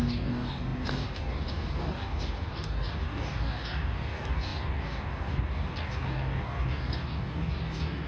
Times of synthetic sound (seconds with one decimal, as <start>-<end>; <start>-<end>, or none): 0.0-8.1